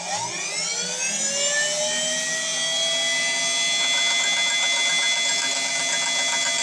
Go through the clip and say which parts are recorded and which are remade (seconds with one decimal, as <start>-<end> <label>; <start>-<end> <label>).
0.0-6.6 recorded